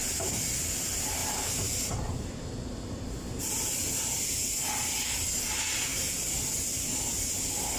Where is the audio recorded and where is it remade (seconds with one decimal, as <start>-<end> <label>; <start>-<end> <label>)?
0.0-1.2 recorded; 1.2-3.7 remade; 3.7-7.8 recorded